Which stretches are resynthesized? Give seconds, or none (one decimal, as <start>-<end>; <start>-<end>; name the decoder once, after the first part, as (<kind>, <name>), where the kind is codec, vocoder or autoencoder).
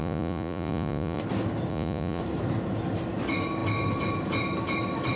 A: 0.0-1.2 (vocoder, Vocos); 1.7-2.2